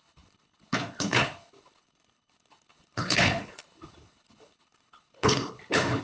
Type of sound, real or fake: fake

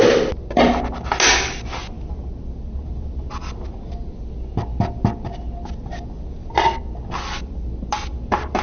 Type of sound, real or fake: real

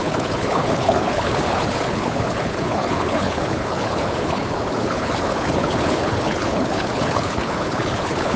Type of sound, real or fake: fake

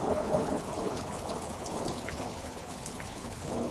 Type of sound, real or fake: fake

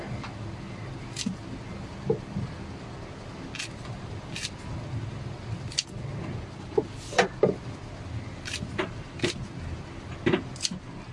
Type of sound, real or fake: real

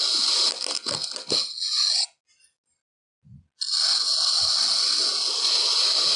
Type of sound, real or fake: real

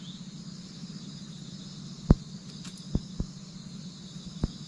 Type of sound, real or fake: real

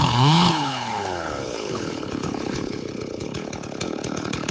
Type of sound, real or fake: fake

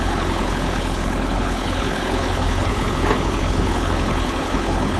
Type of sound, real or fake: fake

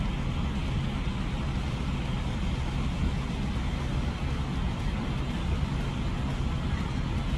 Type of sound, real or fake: real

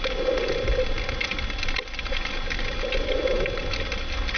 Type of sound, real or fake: real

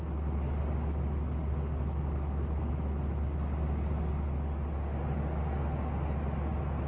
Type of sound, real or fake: real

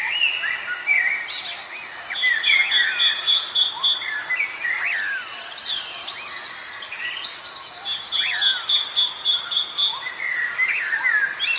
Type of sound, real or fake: real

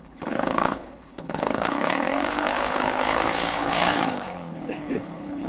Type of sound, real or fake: fake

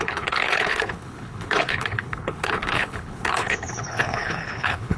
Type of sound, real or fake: fake